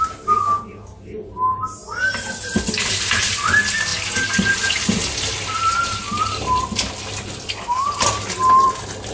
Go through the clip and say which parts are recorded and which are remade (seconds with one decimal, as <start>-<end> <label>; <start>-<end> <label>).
0.0-9.1 recorded